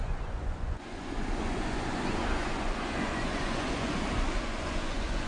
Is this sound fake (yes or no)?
yes